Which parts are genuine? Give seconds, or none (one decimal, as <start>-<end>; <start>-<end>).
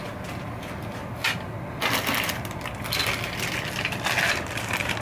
0.0-5.0